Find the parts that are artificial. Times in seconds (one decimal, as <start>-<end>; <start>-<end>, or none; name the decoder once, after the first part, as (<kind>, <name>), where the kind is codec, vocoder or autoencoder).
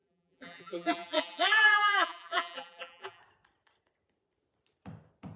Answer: 0.0-3.2 (vocoder, BigVGAN v2)